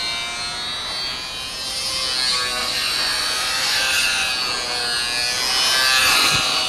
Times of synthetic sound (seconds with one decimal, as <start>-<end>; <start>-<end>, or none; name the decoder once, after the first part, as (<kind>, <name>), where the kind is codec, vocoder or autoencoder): 2.6-4.3 (vocoder, Vocos); 6.0-6.7